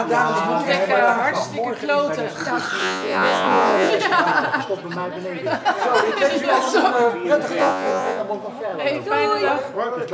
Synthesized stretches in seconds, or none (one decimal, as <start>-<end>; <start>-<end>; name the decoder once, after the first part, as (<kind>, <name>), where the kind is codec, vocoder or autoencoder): 2.8-3.9 (vocoder, Vocos); 7.6-8.2